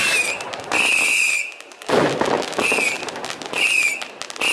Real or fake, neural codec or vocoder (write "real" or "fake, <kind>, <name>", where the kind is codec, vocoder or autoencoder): real